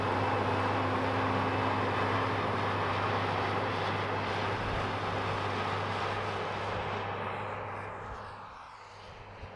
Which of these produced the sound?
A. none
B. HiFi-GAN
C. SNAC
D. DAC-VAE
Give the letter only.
A